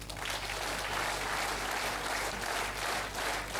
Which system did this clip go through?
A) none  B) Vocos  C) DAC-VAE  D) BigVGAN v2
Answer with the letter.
A